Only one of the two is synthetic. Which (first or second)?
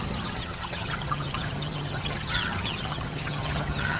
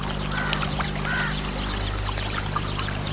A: first